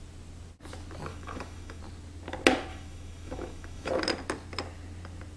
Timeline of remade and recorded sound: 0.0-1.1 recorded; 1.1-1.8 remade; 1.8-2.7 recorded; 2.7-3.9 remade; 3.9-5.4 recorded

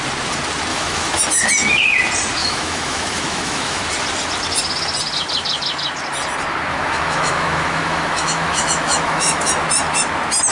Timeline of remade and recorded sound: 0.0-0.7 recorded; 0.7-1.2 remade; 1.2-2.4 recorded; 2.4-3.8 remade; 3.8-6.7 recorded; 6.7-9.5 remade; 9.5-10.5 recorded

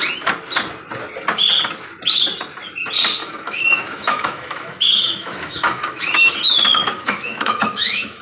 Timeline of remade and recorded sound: 0.0-3.2 recorded; 3.2-6.3 remade; 6.3-6.8 recorded; 6.8-8.2 remade

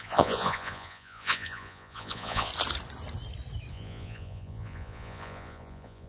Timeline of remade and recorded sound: 0.0-2.5 remade; 2.5-3.7 recorded; 3.7-6.1 remade

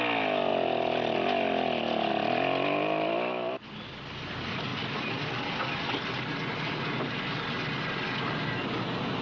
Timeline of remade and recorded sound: 0.0-9.2 recorded

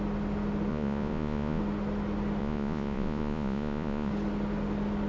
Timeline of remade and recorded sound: 0.0-0.7 recorded; 0.7-1.6 remade; 1.6-2.4 recorded; 2.4-4.1 remade; 4.1-5.1 recorded

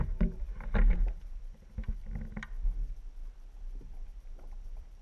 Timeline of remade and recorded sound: 0.0-2.0 remade; 2.0-3.8 recorded; 3.8-5.0 remade

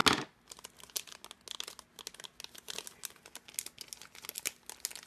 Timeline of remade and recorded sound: 0.0-5.1 recorded